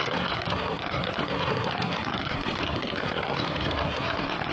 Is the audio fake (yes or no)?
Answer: yes